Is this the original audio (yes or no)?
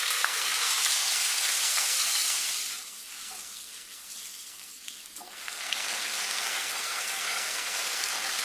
no